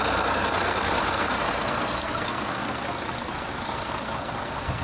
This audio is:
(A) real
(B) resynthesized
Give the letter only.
B